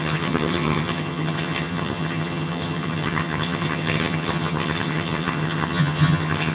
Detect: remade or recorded remade